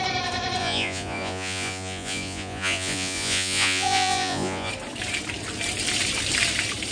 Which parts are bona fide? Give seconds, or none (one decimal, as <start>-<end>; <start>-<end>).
0.0-0.6; 4.7-6.9